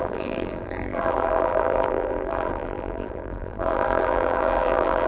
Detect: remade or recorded remade